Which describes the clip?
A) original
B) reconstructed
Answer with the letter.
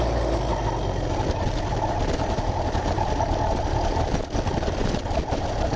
A